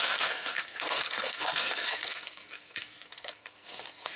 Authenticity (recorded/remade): remade